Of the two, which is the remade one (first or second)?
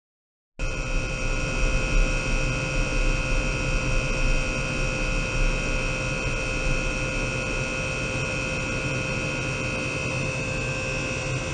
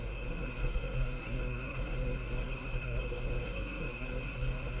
second